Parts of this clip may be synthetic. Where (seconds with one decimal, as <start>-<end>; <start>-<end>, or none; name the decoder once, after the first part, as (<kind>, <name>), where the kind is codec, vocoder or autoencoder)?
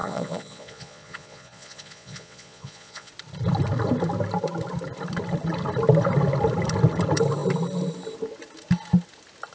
0.0-3.1 (vocoder, Vocos)